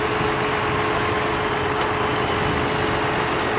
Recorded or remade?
recorded